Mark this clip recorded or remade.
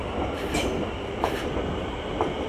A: recorded